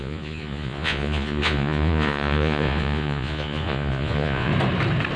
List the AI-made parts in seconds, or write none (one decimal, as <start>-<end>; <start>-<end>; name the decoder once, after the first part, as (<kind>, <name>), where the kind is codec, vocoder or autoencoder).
0.0-4.5 (vocoder, Vocos)